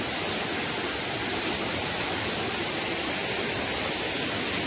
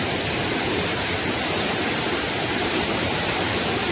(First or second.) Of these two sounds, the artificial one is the second